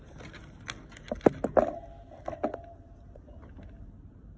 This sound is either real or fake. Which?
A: real